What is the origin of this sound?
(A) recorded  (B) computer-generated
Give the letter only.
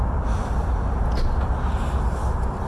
A